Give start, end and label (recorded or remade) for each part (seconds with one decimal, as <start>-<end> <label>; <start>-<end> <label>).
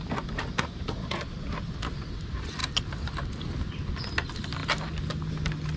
0.0-5.8 recorded